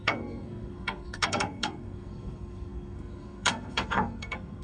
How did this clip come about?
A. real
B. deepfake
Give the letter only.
B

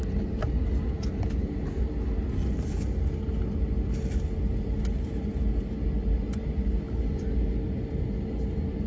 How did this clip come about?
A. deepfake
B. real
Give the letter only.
B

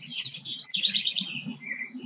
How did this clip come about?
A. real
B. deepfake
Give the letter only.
B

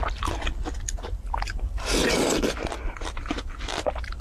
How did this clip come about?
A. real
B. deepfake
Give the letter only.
A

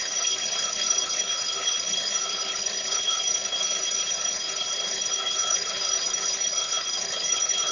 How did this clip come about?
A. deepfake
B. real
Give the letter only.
A